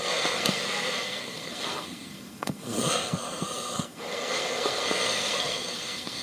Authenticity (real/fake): fake